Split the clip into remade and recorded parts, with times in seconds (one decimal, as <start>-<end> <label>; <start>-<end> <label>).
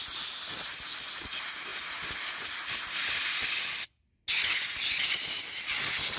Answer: 0.0-6.2 recorded